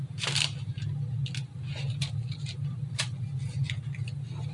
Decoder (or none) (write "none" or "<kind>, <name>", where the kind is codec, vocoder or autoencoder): none